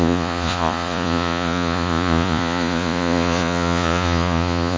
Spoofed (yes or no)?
yes